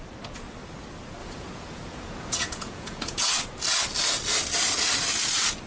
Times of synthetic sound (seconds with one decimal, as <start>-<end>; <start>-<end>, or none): 1.2-3.3